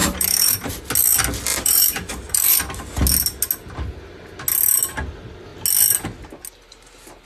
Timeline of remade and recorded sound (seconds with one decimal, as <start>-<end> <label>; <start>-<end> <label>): 0.0-0.7 remade; 0.7-1.5 recorded; 1.5-2.6 remade; 2.6-7.3 recorded

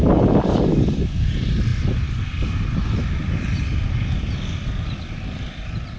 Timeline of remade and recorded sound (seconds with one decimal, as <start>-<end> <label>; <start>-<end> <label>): 0.0-6.0 recorded

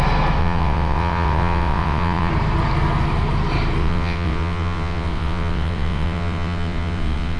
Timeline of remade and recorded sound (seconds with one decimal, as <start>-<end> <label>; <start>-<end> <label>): 0.0-0.4 recorded; 0.4-2.3 remade; 2.3-3.8 recorded; 3.8-7.4 remade

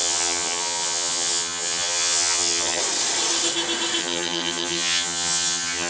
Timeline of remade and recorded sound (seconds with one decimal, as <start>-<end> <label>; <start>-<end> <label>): 0.0-2.8 remade; 2.8-4.0 recorded; 4.0-5.9 remade